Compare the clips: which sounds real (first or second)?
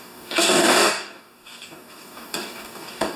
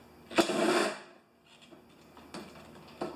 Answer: second